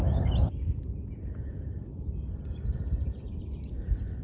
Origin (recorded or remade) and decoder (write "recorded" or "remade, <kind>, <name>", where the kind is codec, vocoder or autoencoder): recorded